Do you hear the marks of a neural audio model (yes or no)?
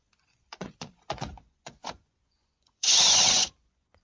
yes